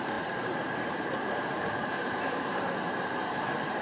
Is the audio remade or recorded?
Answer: remade